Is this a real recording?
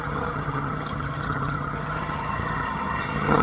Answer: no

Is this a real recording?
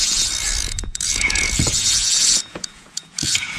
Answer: no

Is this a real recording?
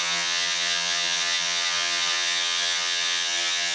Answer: no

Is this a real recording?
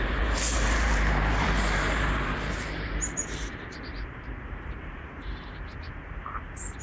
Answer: no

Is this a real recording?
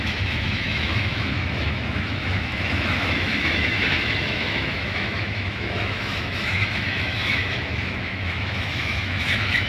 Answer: no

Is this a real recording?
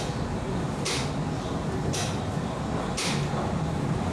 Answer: yes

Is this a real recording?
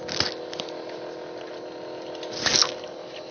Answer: yes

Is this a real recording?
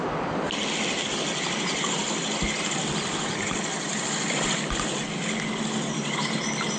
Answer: yes